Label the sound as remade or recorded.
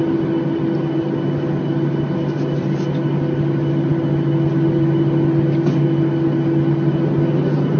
recorded